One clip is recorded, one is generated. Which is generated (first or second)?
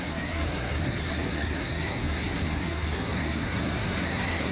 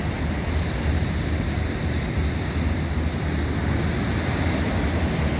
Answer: first